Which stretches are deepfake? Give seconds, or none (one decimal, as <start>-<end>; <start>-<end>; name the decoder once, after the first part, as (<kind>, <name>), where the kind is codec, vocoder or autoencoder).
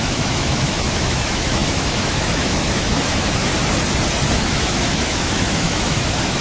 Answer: 0.0-3.5 (autoencoder, DAC-VAE); 4.3-6.4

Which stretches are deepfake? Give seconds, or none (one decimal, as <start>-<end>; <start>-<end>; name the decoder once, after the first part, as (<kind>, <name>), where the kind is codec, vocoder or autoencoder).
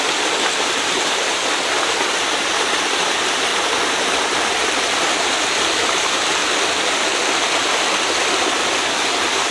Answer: none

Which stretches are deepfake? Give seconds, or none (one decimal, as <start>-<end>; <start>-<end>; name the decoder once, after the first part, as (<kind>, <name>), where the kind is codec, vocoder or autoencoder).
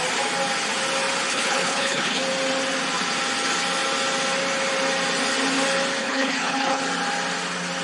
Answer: 1.3-2.2 (codec, HILCodec); 6.0-6.8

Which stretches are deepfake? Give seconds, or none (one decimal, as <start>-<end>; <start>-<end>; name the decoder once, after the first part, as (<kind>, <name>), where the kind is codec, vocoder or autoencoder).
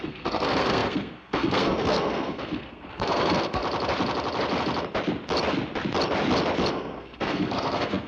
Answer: 0.0-3.6 (codec, SNAC); 6.7-8.1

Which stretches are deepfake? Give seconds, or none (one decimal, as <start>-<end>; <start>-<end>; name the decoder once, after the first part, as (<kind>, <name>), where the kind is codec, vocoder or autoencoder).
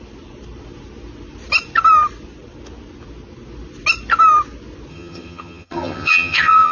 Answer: 4.9-6.7 (vocoder, HiFi-GAN)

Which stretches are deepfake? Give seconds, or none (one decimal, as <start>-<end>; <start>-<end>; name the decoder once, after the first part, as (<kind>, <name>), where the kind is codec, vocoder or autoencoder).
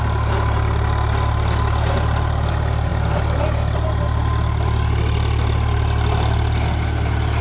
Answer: none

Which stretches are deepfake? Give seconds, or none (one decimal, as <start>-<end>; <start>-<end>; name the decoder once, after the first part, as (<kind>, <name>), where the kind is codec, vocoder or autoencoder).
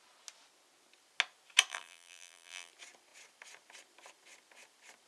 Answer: 1.7-2.7 (vocoder, BigVGAN v2)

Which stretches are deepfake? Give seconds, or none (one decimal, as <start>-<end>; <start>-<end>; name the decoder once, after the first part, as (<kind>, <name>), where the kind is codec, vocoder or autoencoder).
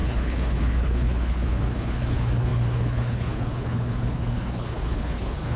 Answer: 0.0-5.6 (codec, HILCodec)